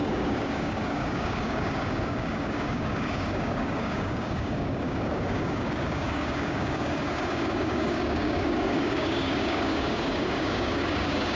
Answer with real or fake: fake